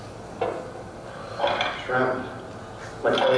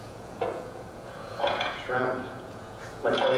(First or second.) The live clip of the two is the first